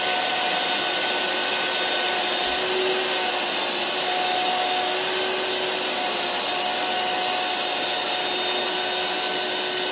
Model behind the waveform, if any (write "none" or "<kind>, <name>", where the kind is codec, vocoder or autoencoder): none